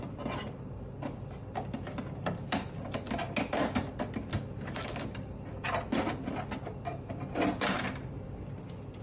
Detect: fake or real real